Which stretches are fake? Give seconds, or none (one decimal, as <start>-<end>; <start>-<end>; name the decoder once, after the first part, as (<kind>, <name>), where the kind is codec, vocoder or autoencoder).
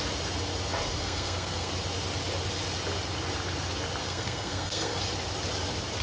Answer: 1.0-1.7 (codec, SNAC); 4.0-5.0